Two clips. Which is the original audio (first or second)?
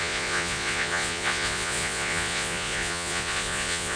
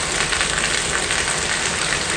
second